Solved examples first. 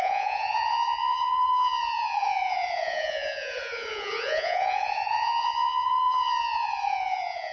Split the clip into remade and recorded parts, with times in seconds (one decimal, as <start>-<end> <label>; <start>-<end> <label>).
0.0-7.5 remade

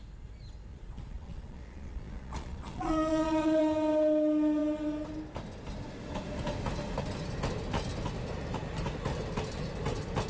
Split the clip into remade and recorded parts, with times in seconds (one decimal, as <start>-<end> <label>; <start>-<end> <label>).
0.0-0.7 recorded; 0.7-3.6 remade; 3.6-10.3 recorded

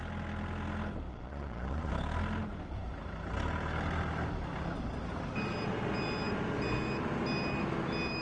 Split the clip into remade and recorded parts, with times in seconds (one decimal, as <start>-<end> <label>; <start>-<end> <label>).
0.0-1.1 recorded; 1.1-1.9 remade; 1.9-8.2 recorded

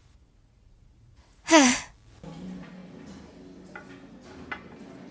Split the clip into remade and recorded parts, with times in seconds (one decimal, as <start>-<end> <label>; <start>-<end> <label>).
0.0-1.7 remade; 1.7-5.1 recorded

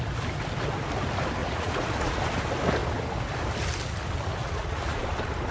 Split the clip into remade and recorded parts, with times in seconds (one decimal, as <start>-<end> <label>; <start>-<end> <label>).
0.0-1.4 recorded; 1.4-2.2 remade; 2.2-4.4 recorded; 4.4-5.0 remade; 5.0-5.5 recorded